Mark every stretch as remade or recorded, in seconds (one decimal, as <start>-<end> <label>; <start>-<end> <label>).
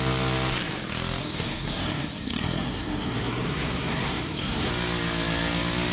0.0-1.2 recorded; 1.2-4.7 remade; 4.7-5.9 recorded